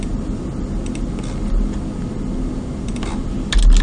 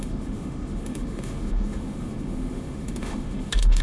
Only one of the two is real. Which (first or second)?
first